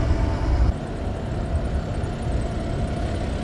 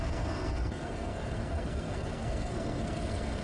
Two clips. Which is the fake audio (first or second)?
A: second